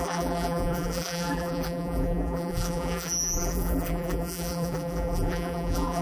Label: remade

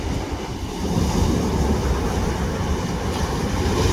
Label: recorded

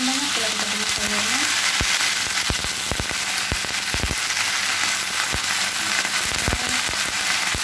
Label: recorded